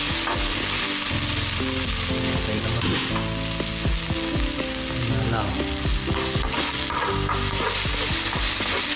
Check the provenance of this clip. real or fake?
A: real